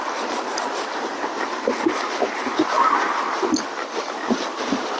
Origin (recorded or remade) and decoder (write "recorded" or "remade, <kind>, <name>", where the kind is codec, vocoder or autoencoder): recorded